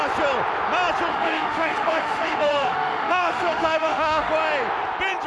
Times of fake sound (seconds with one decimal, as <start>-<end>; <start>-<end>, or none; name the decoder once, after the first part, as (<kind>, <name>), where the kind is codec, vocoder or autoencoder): 1.1-4.3 (autoencoder, DAC-VAE)